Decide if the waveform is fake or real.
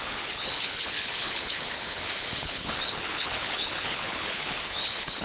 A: fake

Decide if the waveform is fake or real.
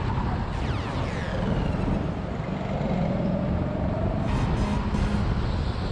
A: real